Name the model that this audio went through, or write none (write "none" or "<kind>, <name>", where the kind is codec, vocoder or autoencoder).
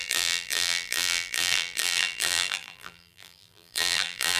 vocoder, BigVGAN v2